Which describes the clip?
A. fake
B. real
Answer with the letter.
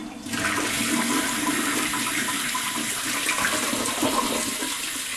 B